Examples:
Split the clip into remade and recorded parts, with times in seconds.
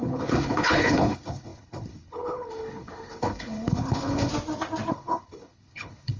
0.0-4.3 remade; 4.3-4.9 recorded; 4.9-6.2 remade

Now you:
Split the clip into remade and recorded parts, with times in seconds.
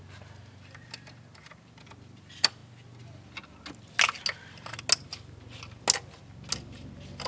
0.0-7.3 recorded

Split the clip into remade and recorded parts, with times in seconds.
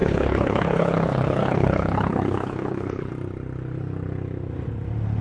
0.0-3.1 remade; 3.1-5.2 recorded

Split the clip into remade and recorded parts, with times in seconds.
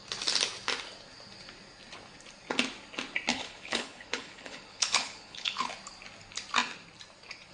0.0-3.3 recorded; 3.3-5.7 remade; 5.7-7.5 recorded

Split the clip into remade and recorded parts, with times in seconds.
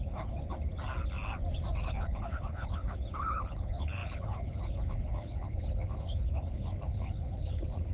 0.0-0.7 remade; 0.7-1.8 recorded; 1.8-7.9 remade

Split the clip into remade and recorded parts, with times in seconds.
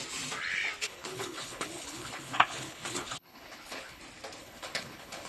0.0-0.8 recorded; 0.8-4.0 remade; 4.0-4.4 recorded; 4.4-5.3 remade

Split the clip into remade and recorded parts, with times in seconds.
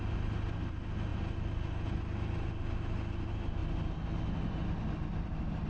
0.0-5.7 recorded